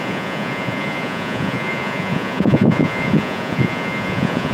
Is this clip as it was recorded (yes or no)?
no